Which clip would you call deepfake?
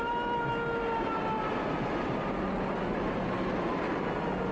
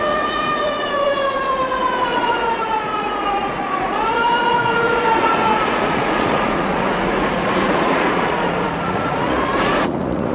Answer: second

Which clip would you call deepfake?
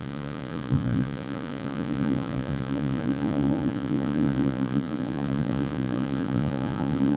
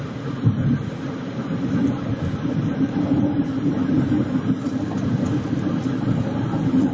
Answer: first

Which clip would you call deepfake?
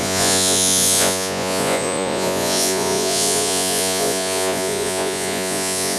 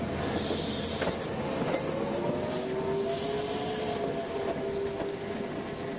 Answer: first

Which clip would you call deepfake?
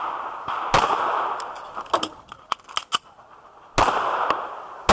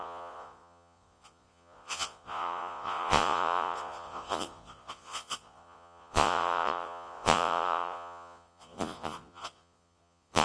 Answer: second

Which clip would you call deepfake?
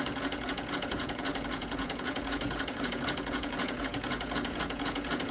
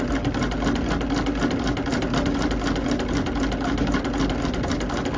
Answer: first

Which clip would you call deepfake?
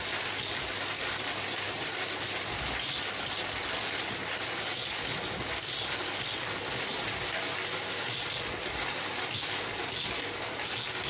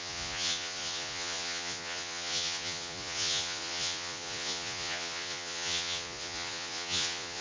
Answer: second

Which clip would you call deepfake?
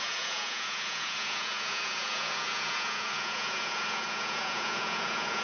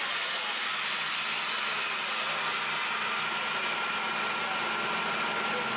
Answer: first